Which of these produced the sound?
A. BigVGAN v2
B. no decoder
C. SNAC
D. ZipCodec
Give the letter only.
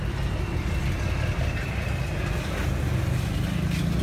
B